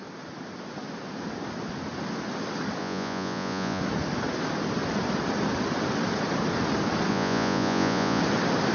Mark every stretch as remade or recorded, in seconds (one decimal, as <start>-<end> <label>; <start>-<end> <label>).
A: 0.0-2.8 recorded; 2.8-3.8 remade; 3.8-7.1 recorded; 7.1-8.2 remade; 8.2-8.7 recorded